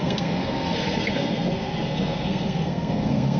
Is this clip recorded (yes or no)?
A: no